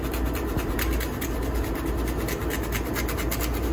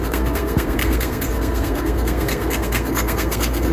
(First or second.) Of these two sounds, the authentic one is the first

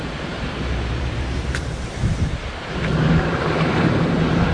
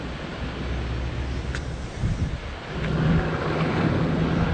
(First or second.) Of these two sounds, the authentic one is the second